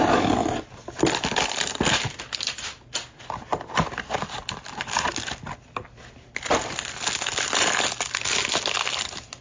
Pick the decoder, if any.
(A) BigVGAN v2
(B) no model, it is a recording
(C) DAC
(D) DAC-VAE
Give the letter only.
B